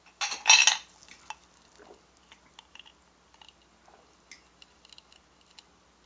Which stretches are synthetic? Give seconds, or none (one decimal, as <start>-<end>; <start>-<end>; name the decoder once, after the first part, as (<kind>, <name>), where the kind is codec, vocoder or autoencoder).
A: none